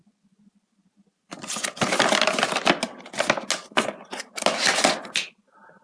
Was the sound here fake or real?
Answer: real